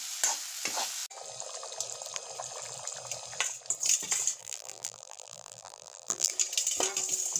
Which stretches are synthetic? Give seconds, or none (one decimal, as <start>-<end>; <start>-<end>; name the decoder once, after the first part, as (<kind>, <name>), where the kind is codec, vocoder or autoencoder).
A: 4.4-6.3 (vocoder, BigVGAN v2)